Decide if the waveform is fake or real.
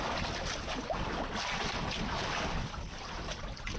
real